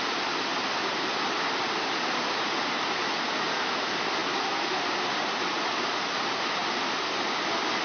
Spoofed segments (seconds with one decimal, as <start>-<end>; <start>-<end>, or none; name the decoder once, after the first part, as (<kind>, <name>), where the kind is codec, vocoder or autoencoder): none